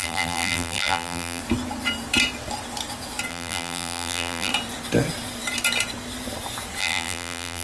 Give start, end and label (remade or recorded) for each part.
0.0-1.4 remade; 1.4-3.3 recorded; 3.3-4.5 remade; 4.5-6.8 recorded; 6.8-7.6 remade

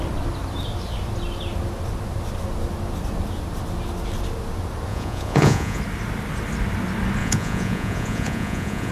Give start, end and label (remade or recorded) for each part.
0.0-4.9 recorded; 4.9-5.8 remade; 5.8-7.2 recorded; 7.2-8.9 remade